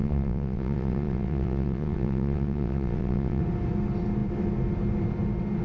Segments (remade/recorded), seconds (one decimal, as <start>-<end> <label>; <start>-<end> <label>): 0.0-3.4 remade; 3.4-5.6 recorded